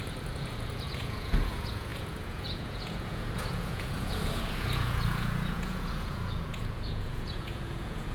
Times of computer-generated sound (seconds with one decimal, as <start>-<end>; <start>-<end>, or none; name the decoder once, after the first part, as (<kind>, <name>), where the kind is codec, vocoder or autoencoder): 0.0-8.1 (vocoder, Vocos)